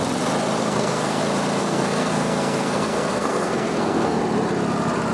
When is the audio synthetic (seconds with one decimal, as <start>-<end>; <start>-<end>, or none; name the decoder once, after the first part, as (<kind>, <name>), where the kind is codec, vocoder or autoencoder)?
0.6-1.2 (codec, SNAC); 1.6-4.2